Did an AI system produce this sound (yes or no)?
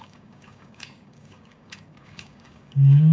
yes